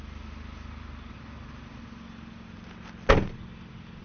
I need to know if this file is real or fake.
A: real